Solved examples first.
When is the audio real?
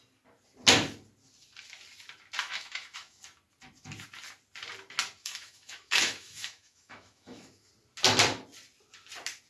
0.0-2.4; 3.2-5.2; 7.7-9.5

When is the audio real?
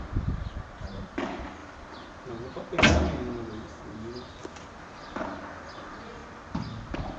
0.0-7.2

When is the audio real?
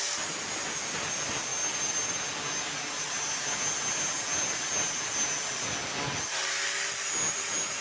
0.0-7.8